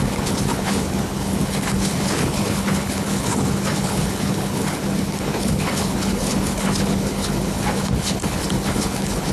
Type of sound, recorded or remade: remade